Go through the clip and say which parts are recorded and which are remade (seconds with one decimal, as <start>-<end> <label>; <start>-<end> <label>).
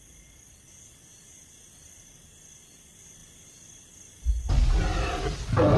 0.0-5.8 recorded